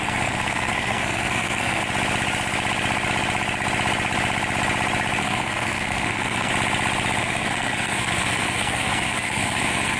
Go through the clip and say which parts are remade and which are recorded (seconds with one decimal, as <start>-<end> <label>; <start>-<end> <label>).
0.0-1.8 remade; 1.8-5.2 recorded; 5.2-6.5 remade; 6.5-7.2 recorded; 7.2-10.0 remade